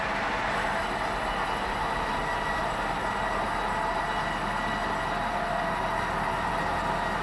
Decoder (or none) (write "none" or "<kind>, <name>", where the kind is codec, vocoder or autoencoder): none